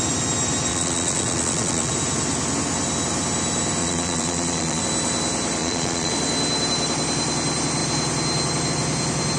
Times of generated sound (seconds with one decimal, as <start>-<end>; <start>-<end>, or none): 0.7-1.9; 3.8-4.8; 5.6-6.1